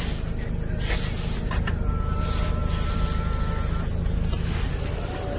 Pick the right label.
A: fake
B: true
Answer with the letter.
B